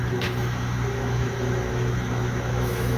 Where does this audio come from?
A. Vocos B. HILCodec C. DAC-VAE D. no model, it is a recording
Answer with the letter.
C